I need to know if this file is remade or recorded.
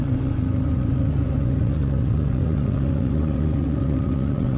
remade